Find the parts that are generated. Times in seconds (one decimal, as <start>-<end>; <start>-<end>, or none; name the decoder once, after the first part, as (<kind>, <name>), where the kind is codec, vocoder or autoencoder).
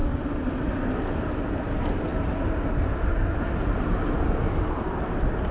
none